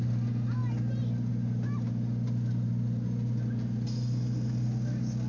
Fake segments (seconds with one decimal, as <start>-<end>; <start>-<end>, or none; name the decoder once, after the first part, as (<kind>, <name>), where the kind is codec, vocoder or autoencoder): none